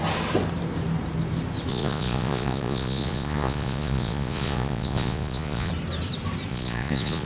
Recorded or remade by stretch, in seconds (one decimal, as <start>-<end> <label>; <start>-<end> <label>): 0.0-1.7 recorded; 1.7-5.7 remade; 5.7-6.5 recorded; 6.5-7.3 remade

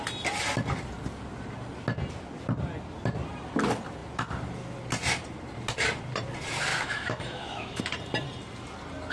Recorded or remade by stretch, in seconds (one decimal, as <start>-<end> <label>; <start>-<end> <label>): 0.0-6.7 recorded; 6.7-7.8 remade; 7.8-9.1 recorded

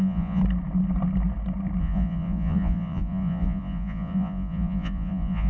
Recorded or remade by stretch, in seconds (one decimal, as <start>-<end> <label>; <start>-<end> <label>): 0.0-0.4 remade; 0.4-1.8 recorded; 1.8-5.5 remade

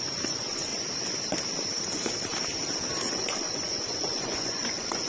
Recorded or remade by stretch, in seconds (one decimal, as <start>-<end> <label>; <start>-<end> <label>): 0.0-0.7 remade; 0.7-3.1 recorded; 3.1-5.1 remade

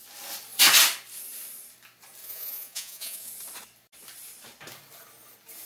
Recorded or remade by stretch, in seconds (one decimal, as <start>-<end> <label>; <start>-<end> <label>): 0.0-2.2 recorded; 2.2-3.3 remade; 3.3-5.7 recorded

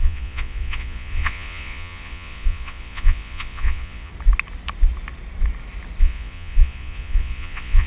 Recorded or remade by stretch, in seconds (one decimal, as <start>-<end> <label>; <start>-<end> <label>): 0.0-4.1 remade; 4.1-6.0 recorded; 6.0-7.9 remade